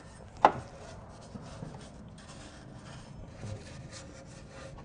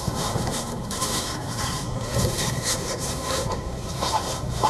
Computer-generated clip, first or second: second